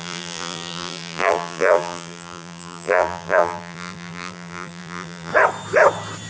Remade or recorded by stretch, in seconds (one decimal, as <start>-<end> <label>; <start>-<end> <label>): 0.0-5.3 remade; 5.3-6.3 recorded